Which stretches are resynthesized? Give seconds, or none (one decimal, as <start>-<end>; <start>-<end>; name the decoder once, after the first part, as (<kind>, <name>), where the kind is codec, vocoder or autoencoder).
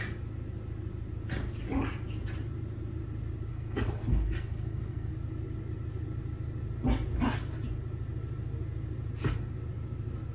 3.5-5.1 (codec, SNAC)